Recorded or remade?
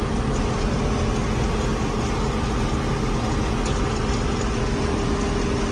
recorded